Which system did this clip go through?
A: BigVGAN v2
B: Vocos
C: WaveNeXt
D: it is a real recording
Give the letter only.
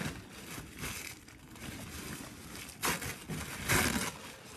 D